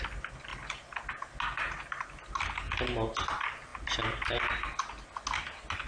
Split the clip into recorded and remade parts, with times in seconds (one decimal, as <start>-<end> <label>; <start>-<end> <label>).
0.0-3.7 recorded; 3.7-4.9 remade; 4.9-5.9 recorded